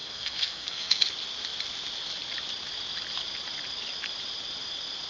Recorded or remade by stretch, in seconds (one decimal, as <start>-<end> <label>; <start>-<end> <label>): 0.0-1.0 remade; 1.0-5.1 recorded